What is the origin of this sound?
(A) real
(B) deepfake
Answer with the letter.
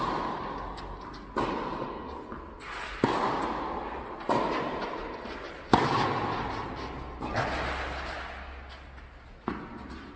A